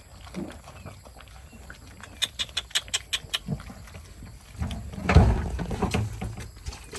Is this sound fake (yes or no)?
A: no